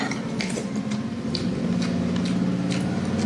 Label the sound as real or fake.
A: real